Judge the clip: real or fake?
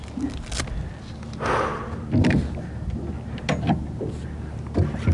real